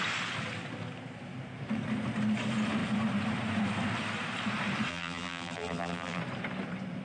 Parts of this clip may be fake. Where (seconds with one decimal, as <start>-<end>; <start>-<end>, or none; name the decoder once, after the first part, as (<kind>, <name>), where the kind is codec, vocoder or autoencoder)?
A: 4.9-6.2 (vocoder, BigVGAN v2)